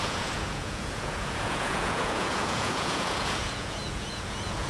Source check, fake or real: fake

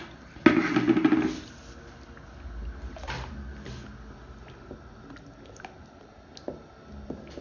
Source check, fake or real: real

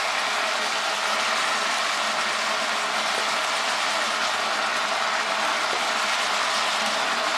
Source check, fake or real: real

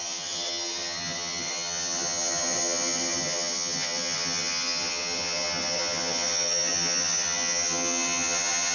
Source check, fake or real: fake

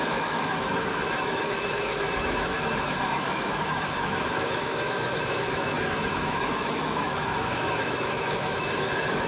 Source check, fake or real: fake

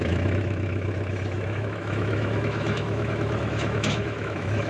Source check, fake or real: fake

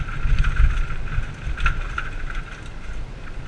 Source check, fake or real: real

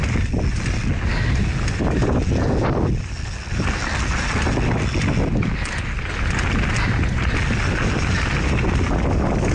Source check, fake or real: real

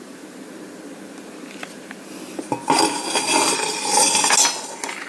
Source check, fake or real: real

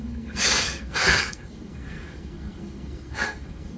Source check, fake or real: fake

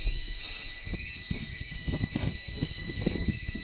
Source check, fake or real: fake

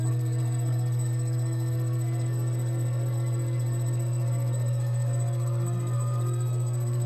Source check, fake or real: fake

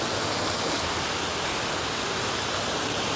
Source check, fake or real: real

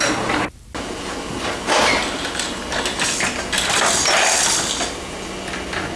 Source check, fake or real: real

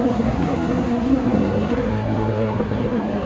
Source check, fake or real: fake